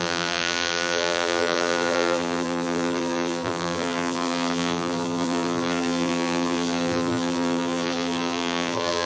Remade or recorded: remade